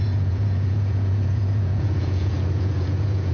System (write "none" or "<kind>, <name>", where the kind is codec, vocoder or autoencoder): vocoder, Vocos